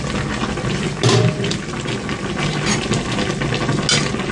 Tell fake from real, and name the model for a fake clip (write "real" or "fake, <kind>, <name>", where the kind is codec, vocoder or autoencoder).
real